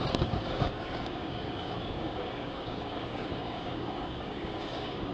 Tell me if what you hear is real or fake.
fake